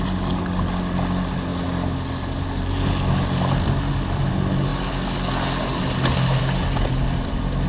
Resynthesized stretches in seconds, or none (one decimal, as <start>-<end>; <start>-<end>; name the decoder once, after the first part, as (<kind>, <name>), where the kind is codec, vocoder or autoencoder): none